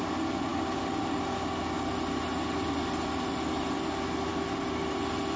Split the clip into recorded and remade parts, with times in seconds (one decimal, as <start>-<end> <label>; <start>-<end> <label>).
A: 0.0-5.4 recorded